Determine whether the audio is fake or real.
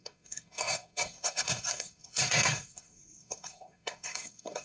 fake